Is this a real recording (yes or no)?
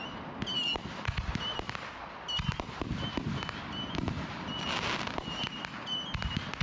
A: yes